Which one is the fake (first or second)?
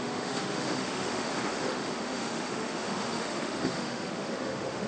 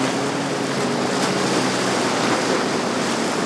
first